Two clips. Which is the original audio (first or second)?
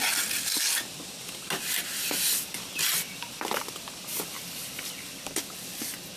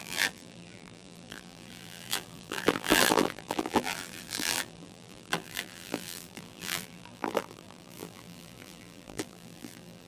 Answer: first